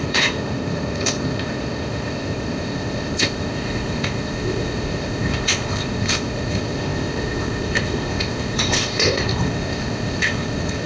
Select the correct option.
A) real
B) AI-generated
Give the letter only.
B